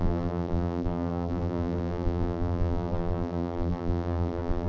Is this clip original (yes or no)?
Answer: no